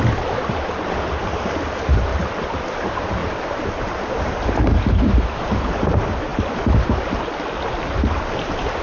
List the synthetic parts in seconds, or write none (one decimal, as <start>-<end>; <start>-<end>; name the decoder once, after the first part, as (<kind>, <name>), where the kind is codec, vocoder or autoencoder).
3.2-4.7 (vocoder, BigVGAN v2)